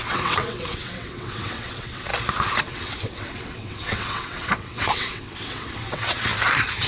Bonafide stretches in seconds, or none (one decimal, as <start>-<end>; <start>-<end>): 2.1-2.6; 6.3-6.9